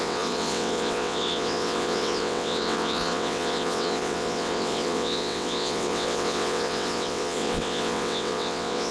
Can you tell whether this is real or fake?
fake